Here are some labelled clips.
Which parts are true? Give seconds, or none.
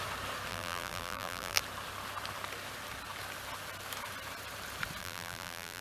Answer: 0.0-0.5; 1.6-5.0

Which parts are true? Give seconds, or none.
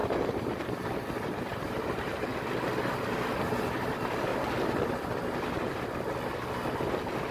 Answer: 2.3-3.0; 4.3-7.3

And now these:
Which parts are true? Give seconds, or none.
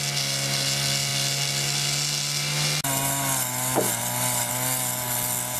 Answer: 0.0-5.6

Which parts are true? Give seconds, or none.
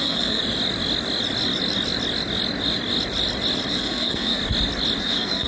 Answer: 0.4-3.7; 4.4-5.0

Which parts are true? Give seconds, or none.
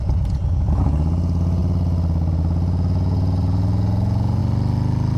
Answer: 1.6-2.3; 4.4-5.2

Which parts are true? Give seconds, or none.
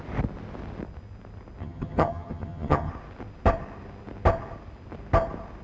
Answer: 0.0-1.6; 2.9-5.6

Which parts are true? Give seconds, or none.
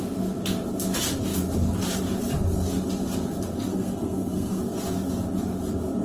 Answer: 0.0-3.7; 4.6-6.0